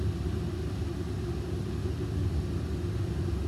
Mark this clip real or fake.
real